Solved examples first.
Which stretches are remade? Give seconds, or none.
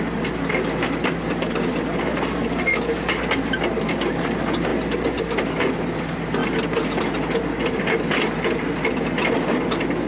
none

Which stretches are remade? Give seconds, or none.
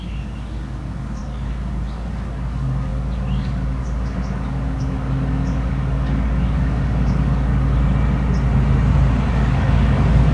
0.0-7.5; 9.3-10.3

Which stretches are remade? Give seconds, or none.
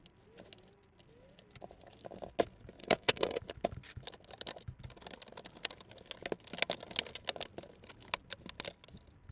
2.8-3.4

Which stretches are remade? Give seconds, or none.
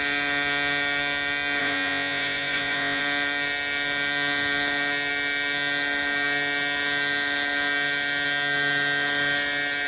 1.6-3.0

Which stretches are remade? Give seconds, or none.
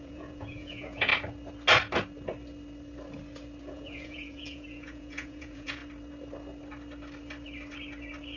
0.0-1.1; 3.6-5.8